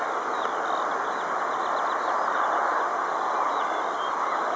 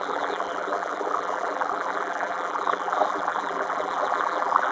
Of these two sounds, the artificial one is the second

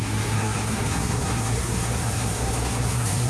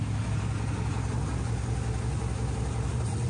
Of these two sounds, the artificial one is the first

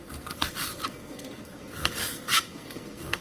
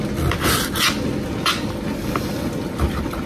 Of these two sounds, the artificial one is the first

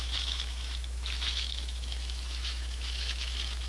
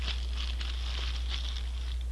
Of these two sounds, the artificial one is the first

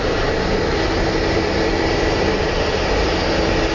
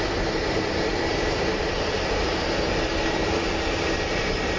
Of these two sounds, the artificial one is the second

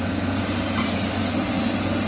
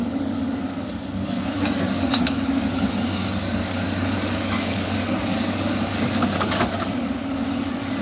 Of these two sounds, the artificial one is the second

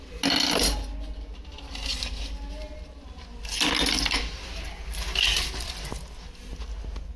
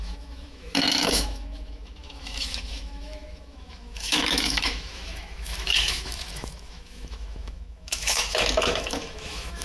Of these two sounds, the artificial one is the second